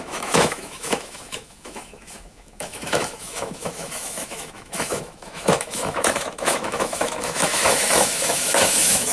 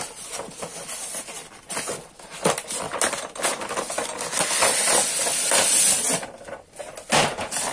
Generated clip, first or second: first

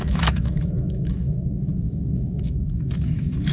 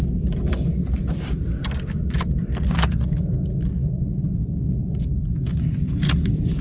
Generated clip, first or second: first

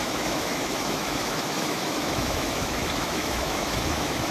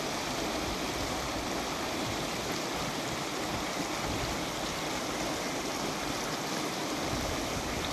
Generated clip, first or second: first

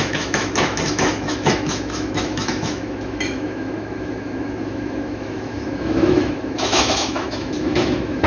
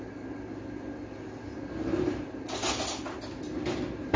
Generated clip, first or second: first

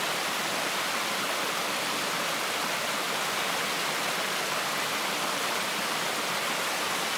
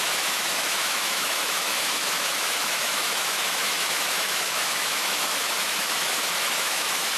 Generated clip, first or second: second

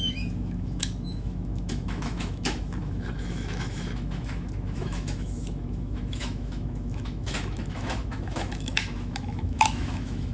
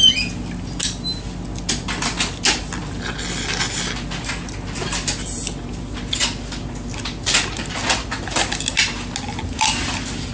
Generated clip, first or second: first